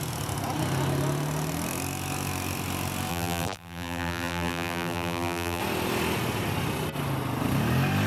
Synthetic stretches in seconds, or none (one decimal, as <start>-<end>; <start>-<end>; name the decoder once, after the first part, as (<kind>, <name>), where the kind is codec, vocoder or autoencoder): 3.1-5.6 (vocoder, BigVGAN v2)